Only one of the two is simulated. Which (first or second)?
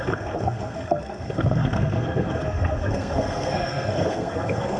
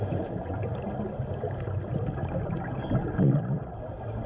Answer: first